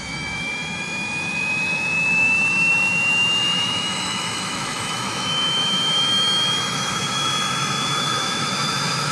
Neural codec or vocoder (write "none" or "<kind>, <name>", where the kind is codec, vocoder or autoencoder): autoencoder, DAC-VAE